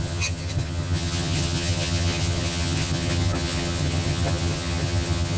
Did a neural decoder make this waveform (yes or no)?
yes